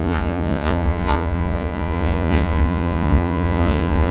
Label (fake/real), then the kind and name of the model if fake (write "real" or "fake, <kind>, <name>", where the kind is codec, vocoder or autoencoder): fake, vocoder, Vocos